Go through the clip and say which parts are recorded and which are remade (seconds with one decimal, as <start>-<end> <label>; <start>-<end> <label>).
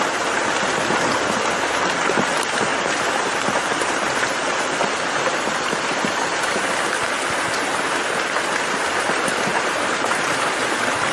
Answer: 0.0-2.7 recorded; 2.7-4.6 remade; 4.6-9.5 recorded; 9.5-10.4 remade; 10.4-11.1 recorded